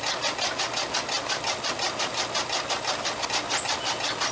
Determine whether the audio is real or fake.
real